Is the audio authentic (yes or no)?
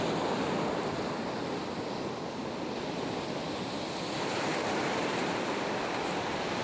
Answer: yes